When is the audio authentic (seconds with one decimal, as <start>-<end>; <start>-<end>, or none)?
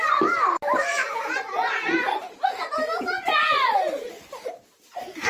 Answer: 0.0-0.9; 4.1-5.3